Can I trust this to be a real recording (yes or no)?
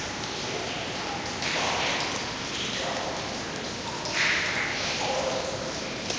yes